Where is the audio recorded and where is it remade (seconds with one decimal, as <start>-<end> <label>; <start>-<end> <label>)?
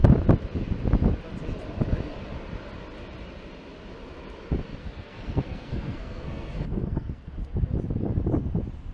0.0-4.8 recorded; 4.8-7.3 remade; 7.3-8.9 recorded